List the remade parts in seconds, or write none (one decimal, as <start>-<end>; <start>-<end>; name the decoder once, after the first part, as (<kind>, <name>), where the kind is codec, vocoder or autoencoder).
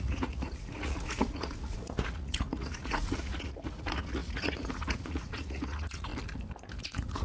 0.0-6.1 (vocoder, Vocos); 6.8-7.2